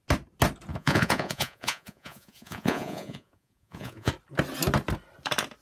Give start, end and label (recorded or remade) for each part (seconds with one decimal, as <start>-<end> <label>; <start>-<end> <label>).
0.0-0.7 recorded; 0.7-4.1 remade; 4.1-5.6 recorded